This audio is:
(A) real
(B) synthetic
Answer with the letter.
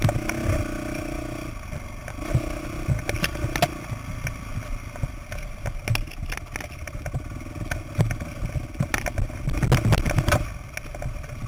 A